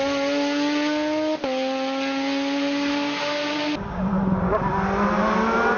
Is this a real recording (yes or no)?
yes